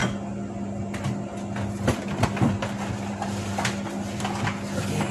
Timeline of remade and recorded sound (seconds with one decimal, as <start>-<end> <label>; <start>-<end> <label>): 0.0-5.1 recorded